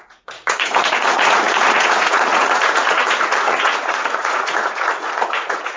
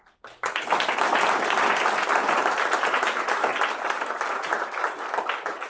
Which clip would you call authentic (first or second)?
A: second